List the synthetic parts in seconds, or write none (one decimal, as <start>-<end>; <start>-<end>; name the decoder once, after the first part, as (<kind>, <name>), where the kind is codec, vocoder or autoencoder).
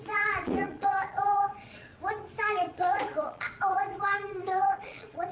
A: 0.0-1.9 (vocoder, Vocos); 2.4-5.3